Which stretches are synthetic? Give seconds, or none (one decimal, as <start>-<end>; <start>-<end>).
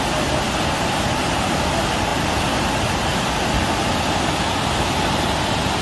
none